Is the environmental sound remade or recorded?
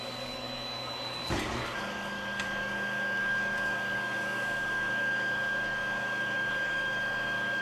remade